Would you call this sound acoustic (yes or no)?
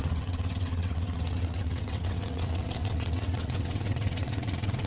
no